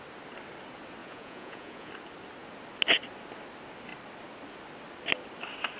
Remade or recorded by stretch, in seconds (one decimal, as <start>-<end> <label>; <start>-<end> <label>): 0.0-1.0 recorded; 1.0-1.9 remade; 1.9-5.8 recorded